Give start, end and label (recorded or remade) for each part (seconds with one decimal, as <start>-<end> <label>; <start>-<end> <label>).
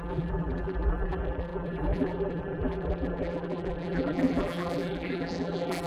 0.0-5.9 remade